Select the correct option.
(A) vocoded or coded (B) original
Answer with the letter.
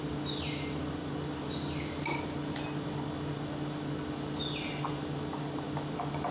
B